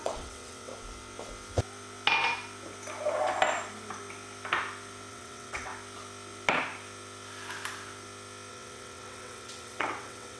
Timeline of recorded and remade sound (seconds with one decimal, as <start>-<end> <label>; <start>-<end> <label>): 0.0-0.7 remade; 0.7-5.1 recorded; 5.1-5.7 remade; 5.7-8.5 recorded; 8.5-10.4 remade